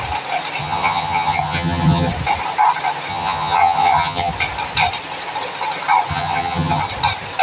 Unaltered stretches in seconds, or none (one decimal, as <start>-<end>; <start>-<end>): 0.0-0.6; 2.1-3.1; 4.3-6.1; 6.8-7.4